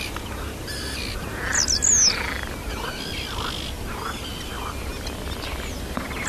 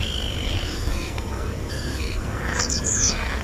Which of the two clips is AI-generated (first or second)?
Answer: second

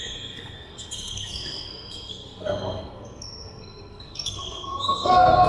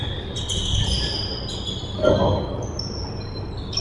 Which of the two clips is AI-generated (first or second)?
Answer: first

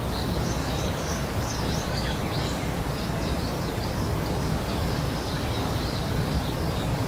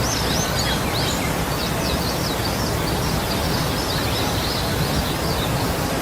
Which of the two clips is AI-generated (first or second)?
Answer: first